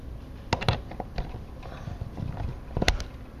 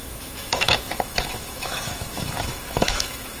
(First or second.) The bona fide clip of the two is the first